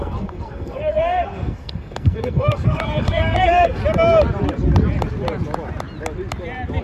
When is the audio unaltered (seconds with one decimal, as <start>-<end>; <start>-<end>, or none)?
3.8-6.8